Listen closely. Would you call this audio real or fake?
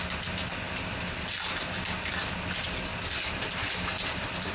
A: real